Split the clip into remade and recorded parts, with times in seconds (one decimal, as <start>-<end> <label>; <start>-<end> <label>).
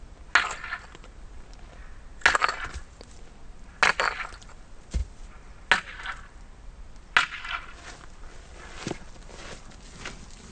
0.0-10.5 recorded